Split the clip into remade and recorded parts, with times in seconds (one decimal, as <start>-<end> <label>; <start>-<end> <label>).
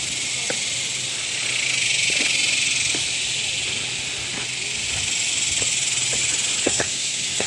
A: 0.0-6.6 recorded; 6.6-7.5 remade